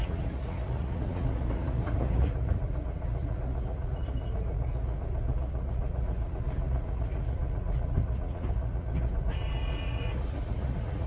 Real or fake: fake